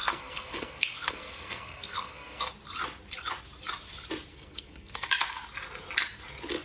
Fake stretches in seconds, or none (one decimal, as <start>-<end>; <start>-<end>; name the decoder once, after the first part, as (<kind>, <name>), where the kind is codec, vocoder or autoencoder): 0.0-2.5 (codec, SNAC); 4.3-5.1